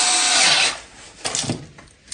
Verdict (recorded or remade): recorded